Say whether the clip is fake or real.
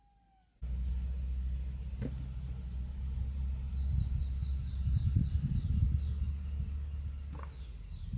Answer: real